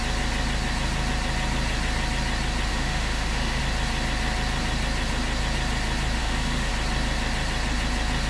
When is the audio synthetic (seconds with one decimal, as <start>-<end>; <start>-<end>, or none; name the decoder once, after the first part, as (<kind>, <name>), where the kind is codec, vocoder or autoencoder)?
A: 2.7-3.6 (autoencoder, DAC-VAE); 6.2-6.7